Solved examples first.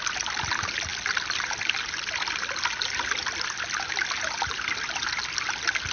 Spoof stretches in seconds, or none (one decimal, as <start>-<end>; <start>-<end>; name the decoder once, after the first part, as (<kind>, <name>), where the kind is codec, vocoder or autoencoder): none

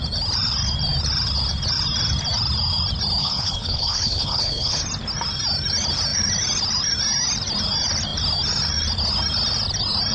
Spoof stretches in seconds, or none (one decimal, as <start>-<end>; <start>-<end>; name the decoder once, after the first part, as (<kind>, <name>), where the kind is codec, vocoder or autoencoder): 3.2-4.8 (codec, HILCodec)

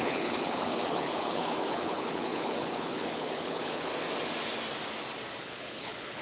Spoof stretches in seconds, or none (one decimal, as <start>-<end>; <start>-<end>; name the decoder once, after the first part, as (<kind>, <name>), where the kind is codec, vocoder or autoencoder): 0.0-3.9 (codec, HILCodec); 5.4-6.2

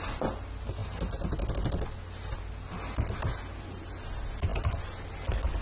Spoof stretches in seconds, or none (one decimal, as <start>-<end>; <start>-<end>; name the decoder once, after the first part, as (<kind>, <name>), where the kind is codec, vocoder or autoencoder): none

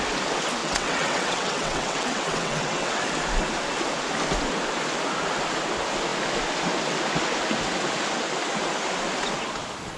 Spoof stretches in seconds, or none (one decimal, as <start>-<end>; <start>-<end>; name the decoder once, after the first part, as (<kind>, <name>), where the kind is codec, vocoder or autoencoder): 0.6-3.0 (vocoder, WaveNeXt)

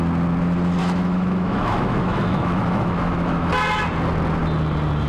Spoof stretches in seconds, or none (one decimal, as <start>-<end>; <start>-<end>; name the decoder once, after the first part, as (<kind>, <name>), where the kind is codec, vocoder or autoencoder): 0.8-3.5 (autoencoder, DAC-VAE)